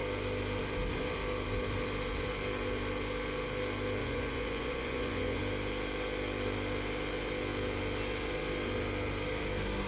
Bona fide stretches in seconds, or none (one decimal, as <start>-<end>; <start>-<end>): 0.0-4.0; 5.4-9.9